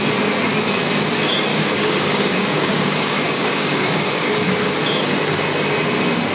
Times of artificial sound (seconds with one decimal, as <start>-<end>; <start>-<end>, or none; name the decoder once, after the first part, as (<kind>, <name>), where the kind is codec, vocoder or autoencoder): 1.5-4.5 (codec, DAC)